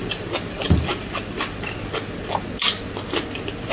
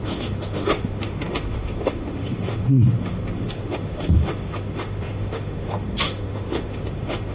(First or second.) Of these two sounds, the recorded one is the first